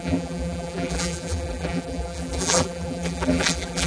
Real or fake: fake